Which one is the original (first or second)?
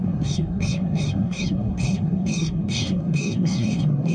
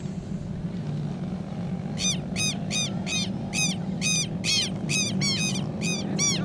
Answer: second